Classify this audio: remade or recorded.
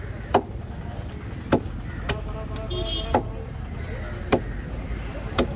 recorded